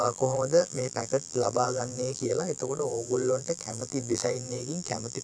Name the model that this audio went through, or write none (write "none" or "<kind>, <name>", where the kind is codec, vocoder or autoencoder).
vocoder, BigVGAN v2